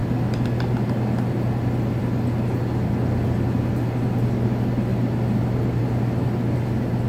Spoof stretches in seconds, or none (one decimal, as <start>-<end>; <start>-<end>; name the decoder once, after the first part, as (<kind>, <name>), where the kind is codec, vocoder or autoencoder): none